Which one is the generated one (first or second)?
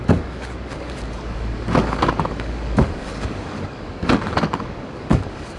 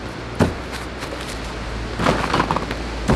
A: first